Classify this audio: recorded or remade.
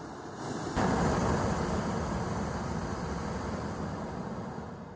recorded